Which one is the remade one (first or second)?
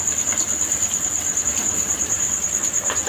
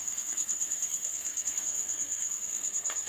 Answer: second